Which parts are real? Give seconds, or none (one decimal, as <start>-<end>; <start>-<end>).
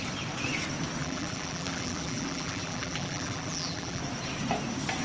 0.0-1.0; 4.0-5.0